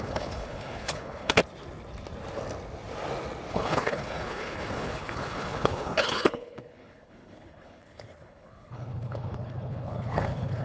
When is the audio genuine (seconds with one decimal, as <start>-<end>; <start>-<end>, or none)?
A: 1.4-3.5

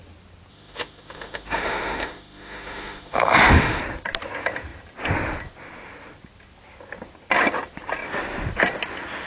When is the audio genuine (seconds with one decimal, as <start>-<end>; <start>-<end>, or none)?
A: 0.0-0.5; 3.8-9.3

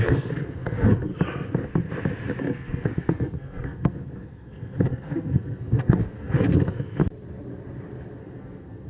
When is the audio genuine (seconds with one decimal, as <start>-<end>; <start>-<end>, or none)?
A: 1.1-2.4; 7.0-8.2

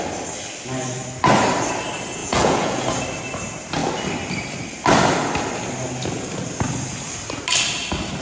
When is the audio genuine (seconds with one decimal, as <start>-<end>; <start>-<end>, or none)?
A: 0.0-2.2; 3.0-8.2

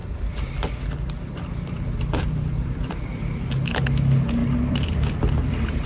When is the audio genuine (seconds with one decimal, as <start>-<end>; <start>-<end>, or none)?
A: 3.5-4.4; 5.5-5.9

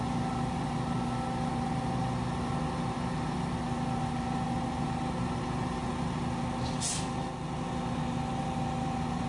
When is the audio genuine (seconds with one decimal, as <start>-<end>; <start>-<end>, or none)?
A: 0.0-9.3

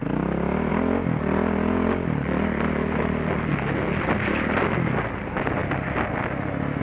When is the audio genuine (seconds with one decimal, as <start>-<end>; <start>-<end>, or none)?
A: 0.0-6.8